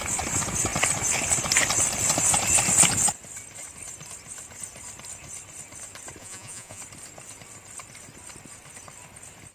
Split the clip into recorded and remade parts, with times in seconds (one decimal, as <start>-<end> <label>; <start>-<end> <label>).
0.0-6.2 recorded; 6.2-6.8 remade; 6.8-9.5 recorded

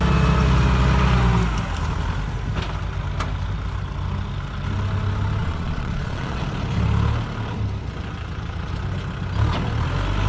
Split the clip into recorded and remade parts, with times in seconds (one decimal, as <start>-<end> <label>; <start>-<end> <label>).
0.0-5.4 recorded; 5.4-6.4 remade; 6.4-10.3 recorded

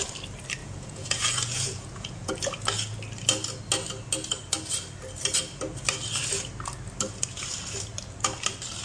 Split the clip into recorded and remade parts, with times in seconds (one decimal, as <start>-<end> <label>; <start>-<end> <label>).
0.0-0.6 recorded; 0.6-2.3 remade; 2.3-8.8 recorded

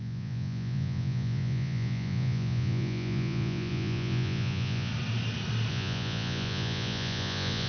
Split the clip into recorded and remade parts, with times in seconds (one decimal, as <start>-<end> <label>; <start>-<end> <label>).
0.0-4.9 remade; 4.9-5.7 recorded; 5.7-7.7 remade